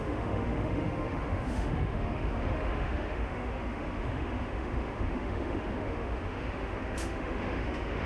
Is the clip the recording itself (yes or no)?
no